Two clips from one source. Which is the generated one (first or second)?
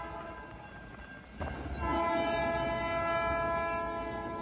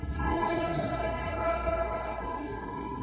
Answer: second